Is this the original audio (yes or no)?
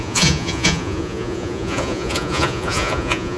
no